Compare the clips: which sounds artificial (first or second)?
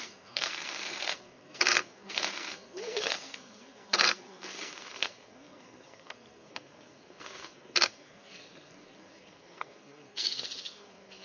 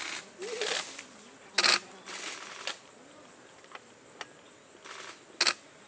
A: first